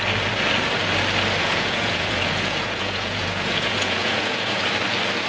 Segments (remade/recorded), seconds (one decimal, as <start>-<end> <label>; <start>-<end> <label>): 0.0-1.4 recorded; 1.4-4.6 remade; 4.6-5.3 recorded